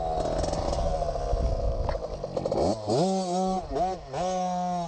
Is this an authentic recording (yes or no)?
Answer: yes